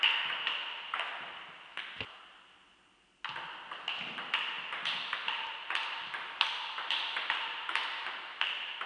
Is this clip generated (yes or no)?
no